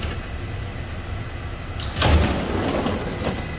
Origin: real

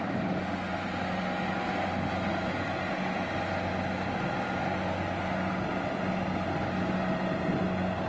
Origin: real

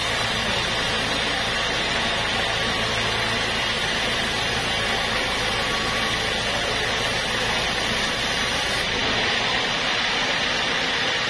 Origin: real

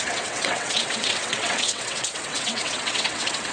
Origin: fake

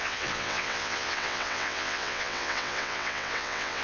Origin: fake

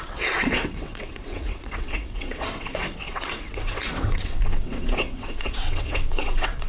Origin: fake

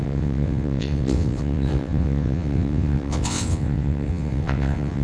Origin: fake